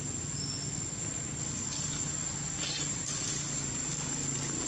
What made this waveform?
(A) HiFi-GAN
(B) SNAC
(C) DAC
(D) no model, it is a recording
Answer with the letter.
D